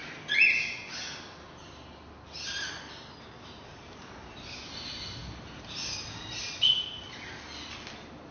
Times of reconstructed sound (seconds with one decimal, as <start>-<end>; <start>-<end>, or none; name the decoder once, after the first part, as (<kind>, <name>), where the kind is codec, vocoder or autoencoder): none

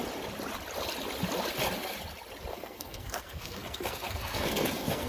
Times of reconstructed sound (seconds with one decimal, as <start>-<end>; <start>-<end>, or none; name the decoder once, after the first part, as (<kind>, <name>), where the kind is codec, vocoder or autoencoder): 2.5-5.1 (codec, SNAC)

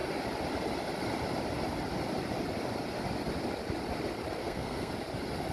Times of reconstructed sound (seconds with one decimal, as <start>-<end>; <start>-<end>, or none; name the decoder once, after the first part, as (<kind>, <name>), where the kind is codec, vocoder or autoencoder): 4.4-4.9 (codec, SNAC)

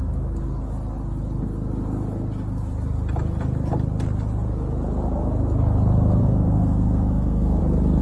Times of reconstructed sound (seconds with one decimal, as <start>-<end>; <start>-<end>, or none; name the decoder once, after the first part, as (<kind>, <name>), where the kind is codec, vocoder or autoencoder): 6.2-7.6 (codec, SNAC)

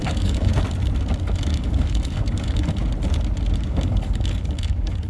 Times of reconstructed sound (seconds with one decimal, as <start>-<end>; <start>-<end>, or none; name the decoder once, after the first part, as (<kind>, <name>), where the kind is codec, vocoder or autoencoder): 0.0-0.5 (codec, DAC); 1.2-2.8; 3.6-5.1

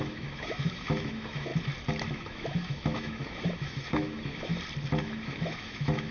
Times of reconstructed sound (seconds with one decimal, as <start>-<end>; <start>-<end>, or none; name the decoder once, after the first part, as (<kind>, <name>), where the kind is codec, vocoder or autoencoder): 0.0-1.5 (autoencoder, DAC-VAE); 2.1-4.5; 5.0-6.1

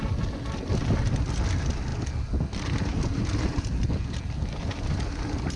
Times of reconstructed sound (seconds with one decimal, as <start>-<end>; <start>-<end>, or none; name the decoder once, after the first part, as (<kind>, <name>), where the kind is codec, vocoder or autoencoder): none